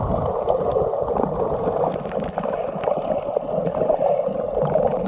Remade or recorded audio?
recorded